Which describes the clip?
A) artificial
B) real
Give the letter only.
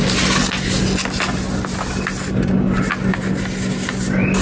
B